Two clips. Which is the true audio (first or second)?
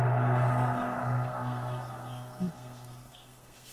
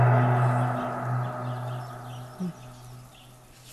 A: second